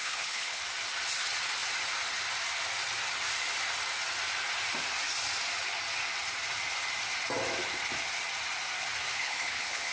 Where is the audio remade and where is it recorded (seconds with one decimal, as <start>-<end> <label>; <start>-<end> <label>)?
0.0-0.6 remade; 0.6-9.2 recorded; 9.2-9.9 remade